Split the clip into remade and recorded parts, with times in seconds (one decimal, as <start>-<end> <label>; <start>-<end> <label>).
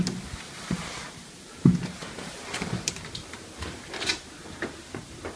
0.0-2.0 recorded; 2.0-5.4 remade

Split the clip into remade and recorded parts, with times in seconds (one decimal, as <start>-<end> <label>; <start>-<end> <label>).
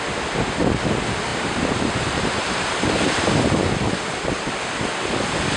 0.0-1.3 recorded; 1.3-3.2 remade; 3.2-5.6 recorded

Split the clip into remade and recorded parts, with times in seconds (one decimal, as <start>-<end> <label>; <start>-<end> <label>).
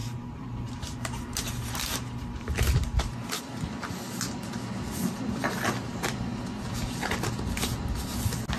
0.0-3.4 remade; 3.4-8.6 recorded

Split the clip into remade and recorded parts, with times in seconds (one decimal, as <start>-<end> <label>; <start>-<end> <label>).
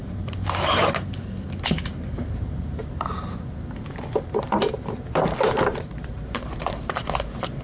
0.0-0.8 remade; 0.8-2.8 recorded; 2.8-7.6 remade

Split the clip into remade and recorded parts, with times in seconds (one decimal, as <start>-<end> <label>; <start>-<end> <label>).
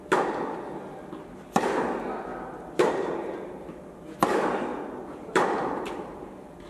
0.0-5.2 recorded; 5.2-6.7 remade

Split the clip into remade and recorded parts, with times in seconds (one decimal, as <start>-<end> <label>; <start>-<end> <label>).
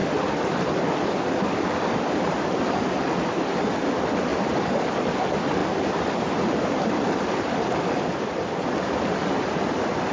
0.0-2.9 remade; 2.9-4.3 recorded; 4.3-5.0 remade; 5.0-5.6 recorded; 5.6-8.7 remade; 8.7-10.1 recorded